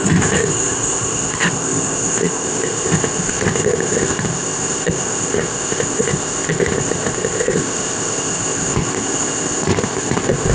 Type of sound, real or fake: fake